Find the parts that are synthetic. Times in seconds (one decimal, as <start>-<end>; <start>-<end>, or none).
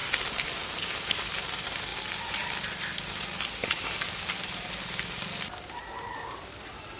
0.0-0.5; 1.9-4.8